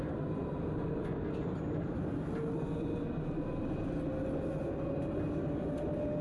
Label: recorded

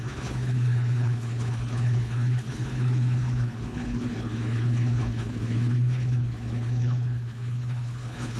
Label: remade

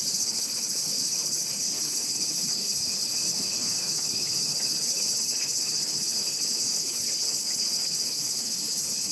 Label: remade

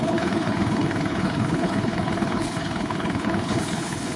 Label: remade